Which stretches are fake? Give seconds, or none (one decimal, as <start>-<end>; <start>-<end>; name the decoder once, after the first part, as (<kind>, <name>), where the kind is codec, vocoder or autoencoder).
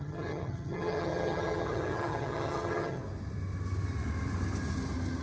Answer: 0.0-3.0 (vocoder, HiFi-GAN)